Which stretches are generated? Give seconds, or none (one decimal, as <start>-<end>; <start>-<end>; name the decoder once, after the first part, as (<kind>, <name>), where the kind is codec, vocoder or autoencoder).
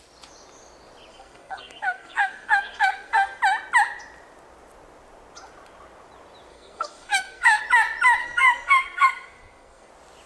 1.1-3.4 (codec, SNAC); 6.5-7.6; 8.2-9.9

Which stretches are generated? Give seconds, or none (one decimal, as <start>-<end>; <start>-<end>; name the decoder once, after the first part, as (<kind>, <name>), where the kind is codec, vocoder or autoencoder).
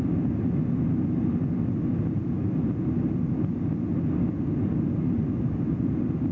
none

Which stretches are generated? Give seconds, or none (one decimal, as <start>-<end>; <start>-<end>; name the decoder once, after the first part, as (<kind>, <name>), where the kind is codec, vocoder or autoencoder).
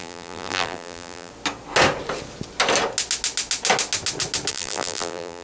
0.0-1.3 (vocoder, BigVGAN v2); 4.5-5.4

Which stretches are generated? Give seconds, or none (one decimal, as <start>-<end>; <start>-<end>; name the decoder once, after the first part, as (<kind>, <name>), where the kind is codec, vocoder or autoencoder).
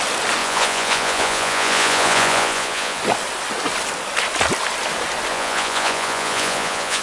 0.4-3.0 (vocoder, Vocos); 5.3-7.0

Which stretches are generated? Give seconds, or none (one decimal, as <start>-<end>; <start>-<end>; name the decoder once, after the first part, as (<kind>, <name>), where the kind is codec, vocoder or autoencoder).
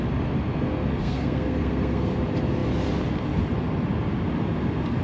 1.0-2.1 (codec, SNAC)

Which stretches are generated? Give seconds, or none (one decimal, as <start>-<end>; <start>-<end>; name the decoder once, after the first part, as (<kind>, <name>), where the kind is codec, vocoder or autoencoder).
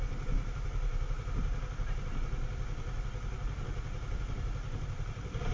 none